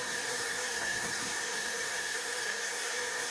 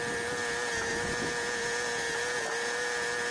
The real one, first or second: second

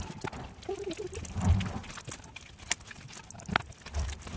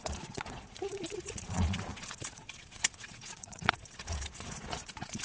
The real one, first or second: first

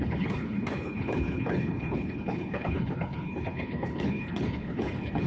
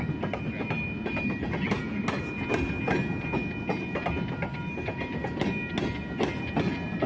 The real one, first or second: second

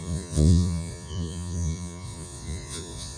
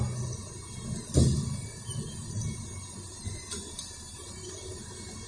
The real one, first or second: second